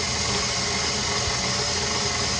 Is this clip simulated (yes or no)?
no